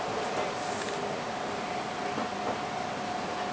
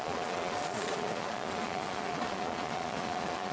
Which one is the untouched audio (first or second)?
first